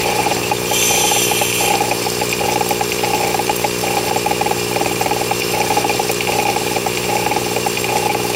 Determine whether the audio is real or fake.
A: fake